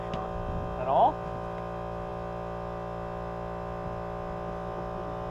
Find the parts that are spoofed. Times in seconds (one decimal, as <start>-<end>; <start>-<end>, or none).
none